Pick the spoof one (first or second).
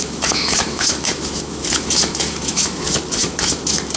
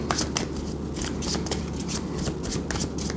first